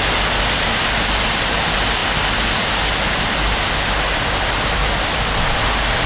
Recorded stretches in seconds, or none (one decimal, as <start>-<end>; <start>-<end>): 0.0-6.1